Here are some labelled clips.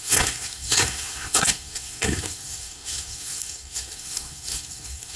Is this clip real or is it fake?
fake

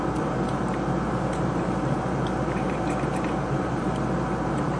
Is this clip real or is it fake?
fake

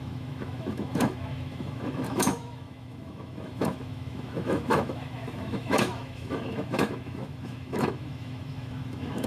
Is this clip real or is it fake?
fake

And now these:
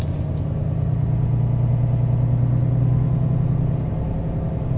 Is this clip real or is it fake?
real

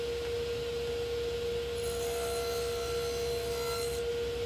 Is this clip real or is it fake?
real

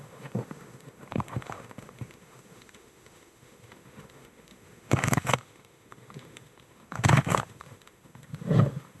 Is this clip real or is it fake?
fake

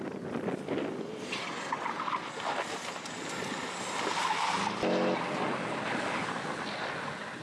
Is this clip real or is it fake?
real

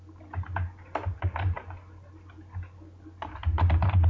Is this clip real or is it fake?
real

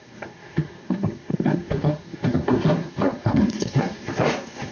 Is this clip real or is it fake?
fake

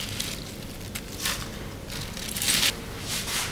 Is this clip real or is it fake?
real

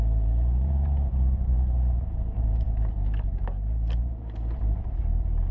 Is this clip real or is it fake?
fake